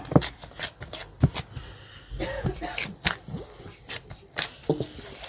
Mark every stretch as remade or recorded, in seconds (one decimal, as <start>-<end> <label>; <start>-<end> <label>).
0.0-5.3 recorded